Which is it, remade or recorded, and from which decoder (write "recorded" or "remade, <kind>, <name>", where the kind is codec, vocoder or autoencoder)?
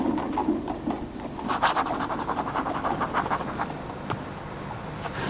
recorded